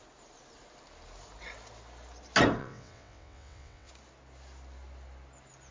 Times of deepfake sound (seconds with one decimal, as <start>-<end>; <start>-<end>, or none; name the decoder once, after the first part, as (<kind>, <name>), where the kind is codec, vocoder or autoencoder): 2.6-3.9 (vocoder, WaveNeXt)